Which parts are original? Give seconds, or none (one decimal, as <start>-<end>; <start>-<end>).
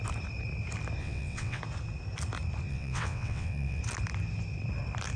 0.0-1.0; 1.6-2.7; 3.8-5.2